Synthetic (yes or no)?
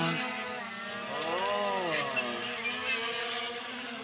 no